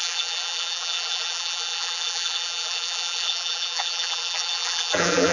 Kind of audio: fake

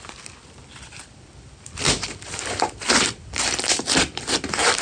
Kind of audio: fake